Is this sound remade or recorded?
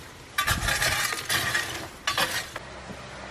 recorded